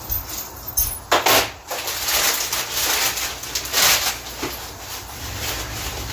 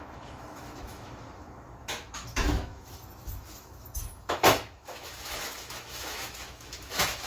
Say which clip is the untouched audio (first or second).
first